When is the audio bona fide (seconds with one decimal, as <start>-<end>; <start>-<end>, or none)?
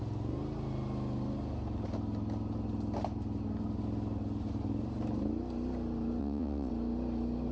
0.0-6.2; 6.7-7.5